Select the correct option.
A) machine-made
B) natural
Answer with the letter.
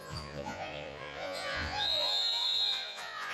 A